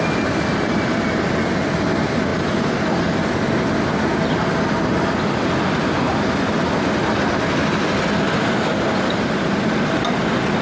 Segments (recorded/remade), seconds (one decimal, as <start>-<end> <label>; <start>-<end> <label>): 0.0-10.6 recorded